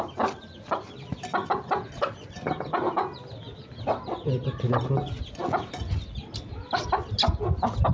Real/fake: real